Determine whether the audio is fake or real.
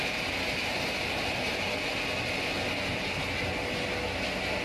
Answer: real